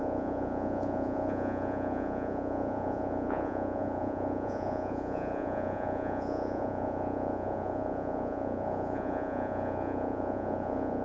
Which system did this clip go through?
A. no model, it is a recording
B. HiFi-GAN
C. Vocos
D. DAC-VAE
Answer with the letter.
C